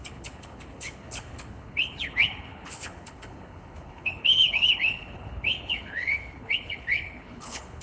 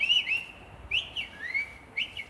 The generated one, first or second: first